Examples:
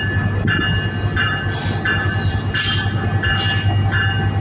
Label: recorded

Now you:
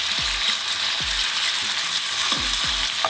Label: recorded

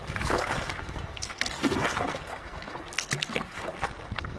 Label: remade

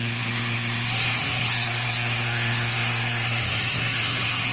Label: remade